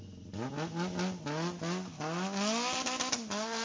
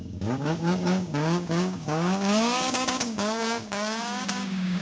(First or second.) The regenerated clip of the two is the second